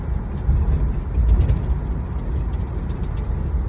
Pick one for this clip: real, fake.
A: real